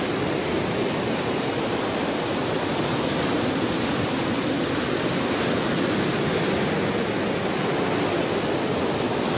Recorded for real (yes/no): yes